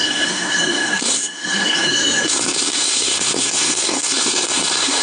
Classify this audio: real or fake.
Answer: fake